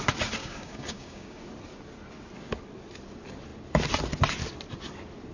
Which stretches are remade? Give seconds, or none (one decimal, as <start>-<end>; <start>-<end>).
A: 0.4-1.4

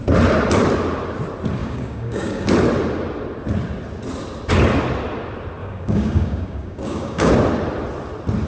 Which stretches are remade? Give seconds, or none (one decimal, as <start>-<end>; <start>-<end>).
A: 1.6-2.5; 5.6-7.3

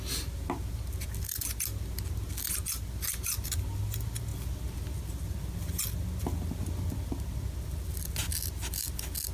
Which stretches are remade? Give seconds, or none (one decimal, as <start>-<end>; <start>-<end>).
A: none

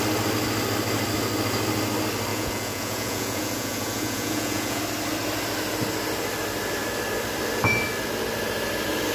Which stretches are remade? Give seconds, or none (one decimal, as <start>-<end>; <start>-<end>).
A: 2.3-4.8

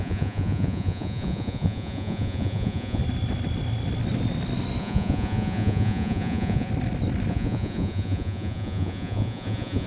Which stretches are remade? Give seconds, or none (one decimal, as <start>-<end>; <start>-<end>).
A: 0.0-3.0; 4.8-6.7; 7.3-9.9

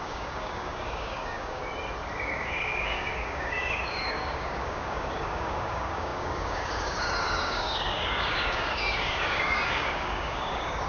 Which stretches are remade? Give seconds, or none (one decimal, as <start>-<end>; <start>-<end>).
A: 0.0-1.6; 2.2-10.9

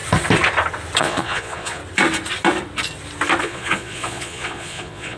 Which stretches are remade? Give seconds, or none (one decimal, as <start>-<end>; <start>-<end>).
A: 1.0-1.8; 3.4-5.2

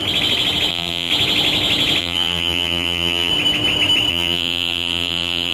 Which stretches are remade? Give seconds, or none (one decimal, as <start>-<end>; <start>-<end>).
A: 0.7-1.1; 2.0-3.3; 4.1-5.5